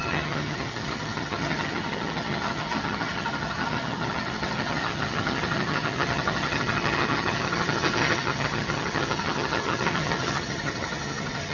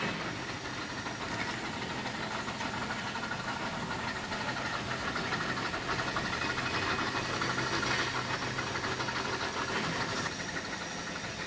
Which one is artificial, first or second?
first